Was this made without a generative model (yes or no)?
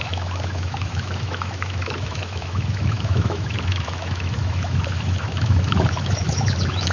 no